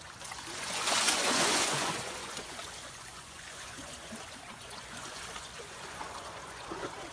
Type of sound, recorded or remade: remade